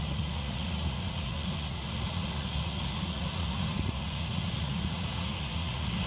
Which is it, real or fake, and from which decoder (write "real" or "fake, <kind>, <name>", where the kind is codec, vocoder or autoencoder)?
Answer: fake, vocoder, Vocos